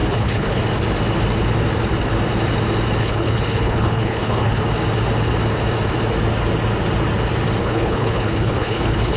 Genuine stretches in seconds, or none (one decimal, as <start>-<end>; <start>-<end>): 0.6-3.0; 4.6-7.6